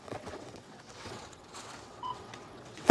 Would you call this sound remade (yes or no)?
yes